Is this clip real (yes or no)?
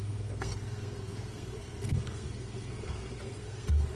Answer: no